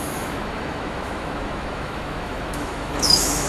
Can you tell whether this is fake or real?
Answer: fake